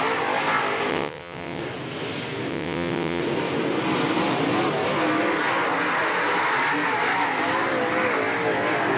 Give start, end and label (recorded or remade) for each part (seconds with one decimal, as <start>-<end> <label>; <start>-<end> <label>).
0.0-0.9 recorded; 0.9-1.6 remade; 1.6-2.5 recorded; 2.5-3.2 remade; 3.2-9.0 recorded